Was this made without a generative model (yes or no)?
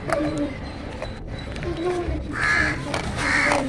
no